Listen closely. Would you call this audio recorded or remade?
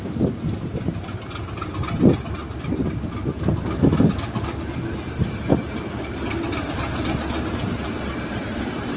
recorded